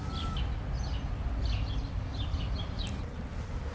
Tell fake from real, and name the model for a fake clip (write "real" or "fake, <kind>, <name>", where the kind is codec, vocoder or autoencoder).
real